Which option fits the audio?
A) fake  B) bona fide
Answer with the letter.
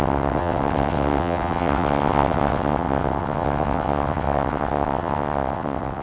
A